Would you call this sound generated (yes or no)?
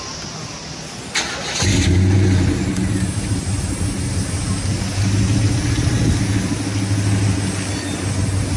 no